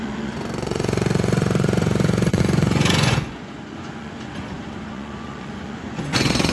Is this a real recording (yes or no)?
no